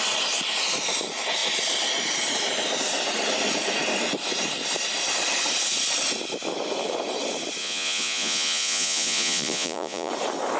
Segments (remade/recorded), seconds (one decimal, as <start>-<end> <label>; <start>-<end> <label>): 0.0-7.6 recorded; 7.6-10.1 remade; 10.1-10.6 recorded